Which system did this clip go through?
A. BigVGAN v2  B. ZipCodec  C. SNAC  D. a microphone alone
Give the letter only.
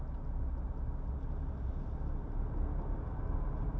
D